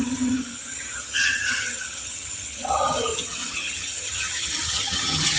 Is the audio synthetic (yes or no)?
yes